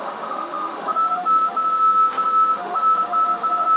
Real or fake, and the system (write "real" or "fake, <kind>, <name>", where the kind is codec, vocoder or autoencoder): fake, autoencoder, DAC-VAE